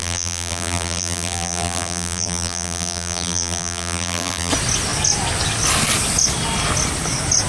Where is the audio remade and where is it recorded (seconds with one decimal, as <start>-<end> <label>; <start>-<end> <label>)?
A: 0.0-4.5 remade; 4.5-7.5 recorded